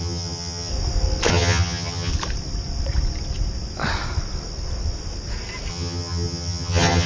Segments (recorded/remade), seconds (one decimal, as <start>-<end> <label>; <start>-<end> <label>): 0.0-0.7 remade; 0.7-1.3 recorded; 1.3-2.1 remade; 2.1-5.7 recorded; 5.7-7.1 remade